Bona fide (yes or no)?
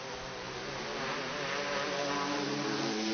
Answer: no